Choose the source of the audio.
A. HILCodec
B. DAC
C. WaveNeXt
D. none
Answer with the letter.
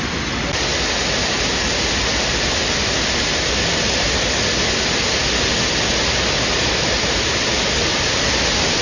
D